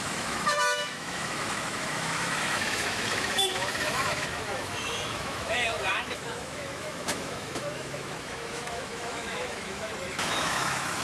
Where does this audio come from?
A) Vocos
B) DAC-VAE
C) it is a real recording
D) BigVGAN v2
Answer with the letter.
B